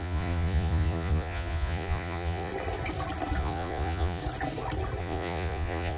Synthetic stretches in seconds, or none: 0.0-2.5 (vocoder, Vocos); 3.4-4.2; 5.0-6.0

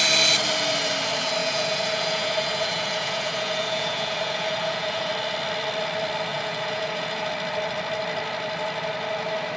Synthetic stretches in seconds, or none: 1.4-5.1 (vocoder, Vocos); 6.3-7.3

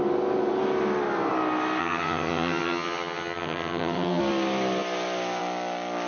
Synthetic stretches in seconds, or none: 1.8-4.2 (vocoder, HiFi-GAN)

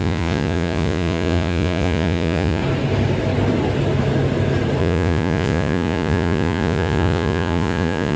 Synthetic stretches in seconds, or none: 0.0-2.6 (vocoder, Vocos); 4.8-8.2

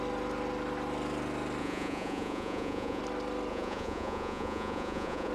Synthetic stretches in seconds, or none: 1.6-3.0 (vocoder, Vocos); 3.5-5.3

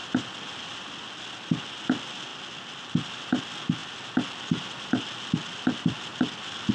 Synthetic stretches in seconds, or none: 2.3-3.3 (vocoder, BigVGAN v2); 6.1-6.7